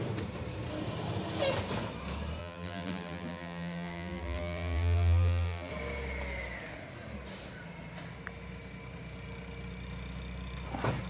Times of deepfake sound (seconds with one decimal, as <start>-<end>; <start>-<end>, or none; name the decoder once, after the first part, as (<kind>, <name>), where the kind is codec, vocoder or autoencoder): 2.4-5.7 (vocoder, BigVGAN v2)